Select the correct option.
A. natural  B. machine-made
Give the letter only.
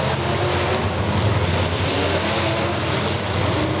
A